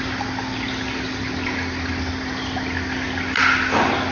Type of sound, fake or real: real